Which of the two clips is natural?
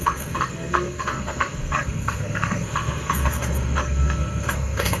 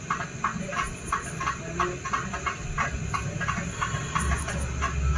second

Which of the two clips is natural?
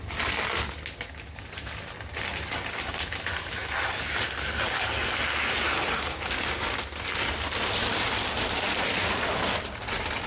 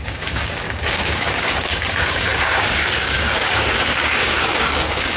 first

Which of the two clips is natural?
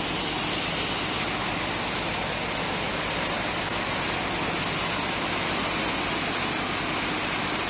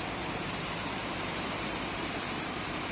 first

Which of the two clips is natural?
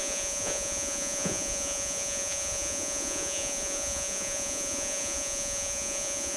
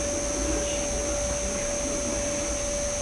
second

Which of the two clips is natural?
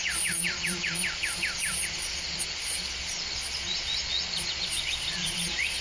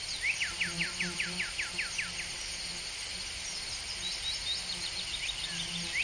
second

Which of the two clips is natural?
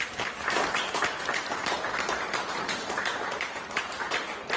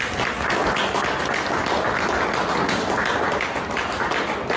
second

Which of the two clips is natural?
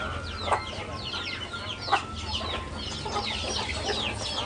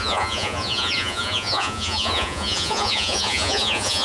first